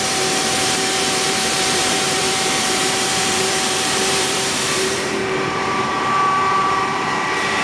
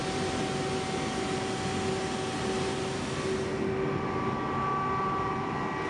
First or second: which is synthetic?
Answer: first